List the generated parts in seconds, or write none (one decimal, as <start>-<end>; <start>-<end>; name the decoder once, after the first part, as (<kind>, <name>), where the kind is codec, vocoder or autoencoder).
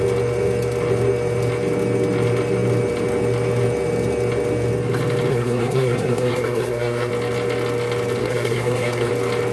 5.3-7.1 (codec, SNAC); 8.2-9.1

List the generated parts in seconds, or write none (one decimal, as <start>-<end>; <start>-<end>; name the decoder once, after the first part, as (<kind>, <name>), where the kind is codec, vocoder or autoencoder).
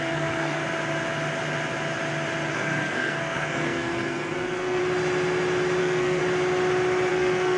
0.0-0.6 (codec, SNAC); 2.5-4.8; 5.8-6.2; 7.1-7.6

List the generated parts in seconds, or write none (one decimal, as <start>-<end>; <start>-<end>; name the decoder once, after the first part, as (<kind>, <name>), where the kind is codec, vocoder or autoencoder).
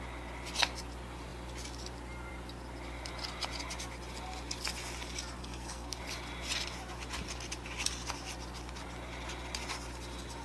5.4-6.0 (codec, SNAC)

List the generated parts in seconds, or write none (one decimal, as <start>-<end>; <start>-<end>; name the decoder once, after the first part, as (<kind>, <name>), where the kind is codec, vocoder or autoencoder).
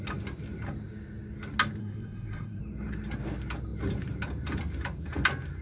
1.8-2.6 (codec, SNAC)